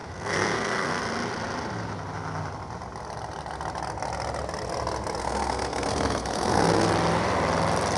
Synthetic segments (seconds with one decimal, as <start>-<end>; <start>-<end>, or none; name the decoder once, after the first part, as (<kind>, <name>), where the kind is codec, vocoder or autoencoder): 0.0-1.0 (codec, SNAC); 5.2-6.9